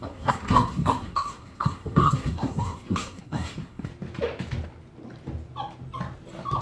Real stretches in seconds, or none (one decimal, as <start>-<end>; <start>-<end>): 3.9-6.6